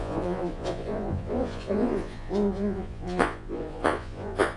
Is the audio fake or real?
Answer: fake